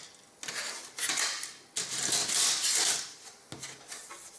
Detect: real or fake real